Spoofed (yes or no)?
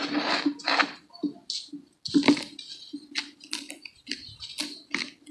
no